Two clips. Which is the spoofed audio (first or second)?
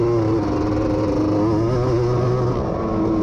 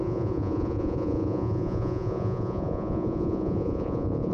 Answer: second